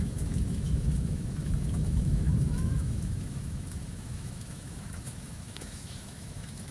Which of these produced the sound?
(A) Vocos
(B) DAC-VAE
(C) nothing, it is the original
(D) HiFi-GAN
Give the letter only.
B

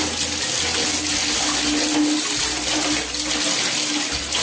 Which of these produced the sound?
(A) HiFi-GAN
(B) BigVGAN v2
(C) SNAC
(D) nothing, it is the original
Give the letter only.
D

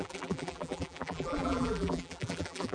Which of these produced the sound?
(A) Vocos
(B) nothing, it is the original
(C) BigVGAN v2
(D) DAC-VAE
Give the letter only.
C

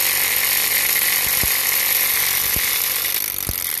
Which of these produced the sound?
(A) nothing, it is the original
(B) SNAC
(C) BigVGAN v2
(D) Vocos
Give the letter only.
A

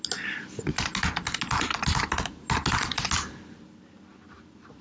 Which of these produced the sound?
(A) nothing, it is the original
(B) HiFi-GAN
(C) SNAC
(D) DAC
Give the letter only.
A